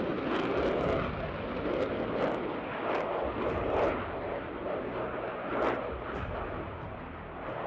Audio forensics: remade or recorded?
recorded